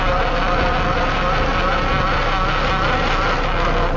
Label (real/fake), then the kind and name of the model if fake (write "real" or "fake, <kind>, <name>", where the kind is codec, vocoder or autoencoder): real